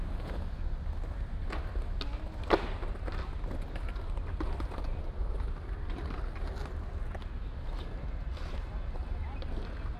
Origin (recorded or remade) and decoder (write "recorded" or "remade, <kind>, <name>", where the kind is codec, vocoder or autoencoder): recorded